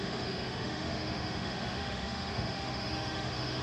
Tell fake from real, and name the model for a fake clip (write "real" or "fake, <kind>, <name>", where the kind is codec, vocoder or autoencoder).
fake, autoencoder, DAC-VAE